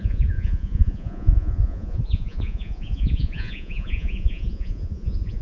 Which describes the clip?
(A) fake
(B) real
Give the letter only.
A